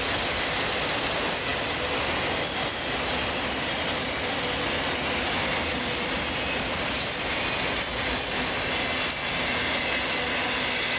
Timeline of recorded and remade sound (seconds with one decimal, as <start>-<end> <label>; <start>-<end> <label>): 0.0-11.0 recorded